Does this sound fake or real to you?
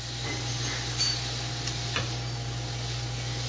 real